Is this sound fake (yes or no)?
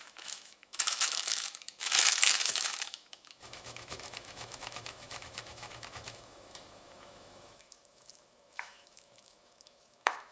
yes